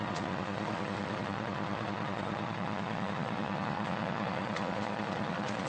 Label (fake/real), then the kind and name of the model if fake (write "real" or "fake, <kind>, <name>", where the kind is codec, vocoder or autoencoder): fake, vocoder, Vocos